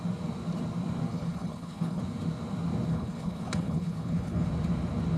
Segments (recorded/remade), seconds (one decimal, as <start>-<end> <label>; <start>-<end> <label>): 0.0-1.1 recorded; 1.1-2.0 remade; 2.0-2.9 recorded; 2.9-4.5 remade; 4.5-5.2 recorded